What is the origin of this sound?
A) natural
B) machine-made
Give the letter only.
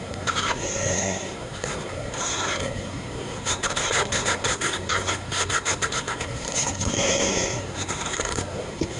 B